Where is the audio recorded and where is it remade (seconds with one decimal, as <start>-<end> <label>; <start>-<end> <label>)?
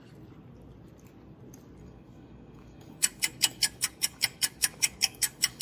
0.0-1.8 recorded; 1.8-5.6 remade